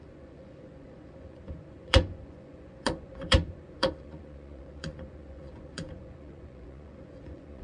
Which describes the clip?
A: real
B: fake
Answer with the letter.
B